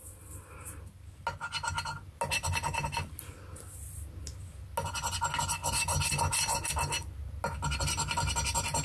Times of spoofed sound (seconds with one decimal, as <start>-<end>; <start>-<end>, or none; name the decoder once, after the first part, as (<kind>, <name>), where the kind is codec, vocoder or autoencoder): none